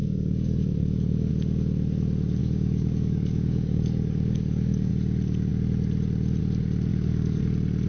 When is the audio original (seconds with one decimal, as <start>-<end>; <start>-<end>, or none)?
1.3-2.4; 4.9-6.9; 7.4-7.9